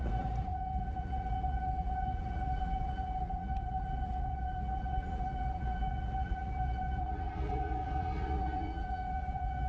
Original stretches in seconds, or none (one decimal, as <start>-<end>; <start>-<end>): none